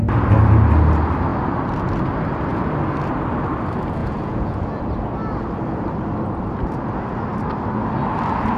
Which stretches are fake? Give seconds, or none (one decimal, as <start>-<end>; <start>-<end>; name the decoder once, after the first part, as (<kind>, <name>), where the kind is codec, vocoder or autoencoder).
4.0-4.8 (vocoder, Vocos)